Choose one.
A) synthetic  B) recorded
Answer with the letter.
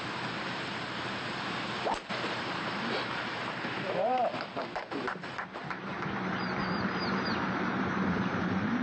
A